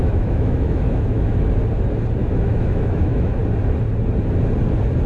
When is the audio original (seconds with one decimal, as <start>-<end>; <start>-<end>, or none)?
1.3-2.2; 3.4-5.1

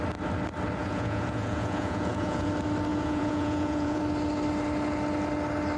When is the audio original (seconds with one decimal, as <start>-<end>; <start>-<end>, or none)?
0.0-0.8; 2.5-2.9; 4.0-5.8

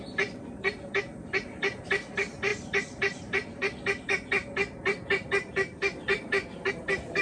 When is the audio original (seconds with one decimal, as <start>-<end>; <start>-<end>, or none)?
0.0-7.2

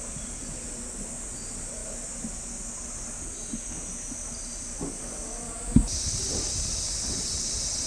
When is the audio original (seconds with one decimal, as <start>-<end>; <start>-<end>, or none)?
0.0-7.9

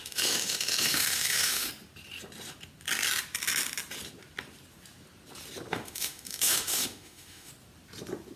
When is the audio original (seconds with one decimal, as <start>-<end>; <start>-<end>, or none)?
1.7-5.7; 7.5-8.4

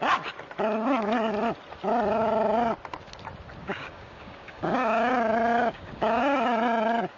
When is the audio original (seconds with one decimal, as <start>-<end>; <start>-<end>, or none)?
0.0-3.6; 5.1-5.5; 6.2-7.2

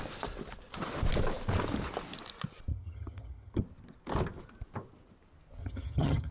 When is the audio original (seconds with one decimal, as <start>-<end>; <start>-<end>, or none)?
0.0-2.7; 3.6-5.6